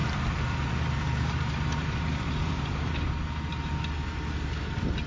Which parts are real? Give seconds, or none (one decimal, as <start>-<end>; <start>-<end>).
3.1-5.1